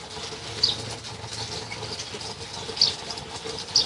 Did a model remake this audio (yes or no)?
no